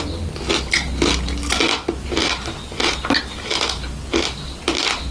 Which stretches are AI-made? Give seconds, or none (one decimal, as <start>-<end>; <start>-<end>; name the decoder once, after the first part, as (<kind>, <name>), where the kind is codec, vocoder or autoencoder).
none